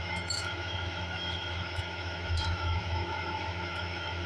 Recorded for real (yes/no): no